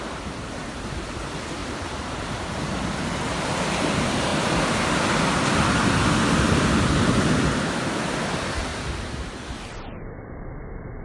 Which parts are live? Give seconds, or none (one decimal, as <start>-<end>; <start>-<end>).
0.0-1.6; 2.6-8.7; 9.5-11.0